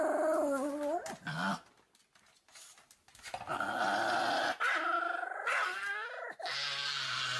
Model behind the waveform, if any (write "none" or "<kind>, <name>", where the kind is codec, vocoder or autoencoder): none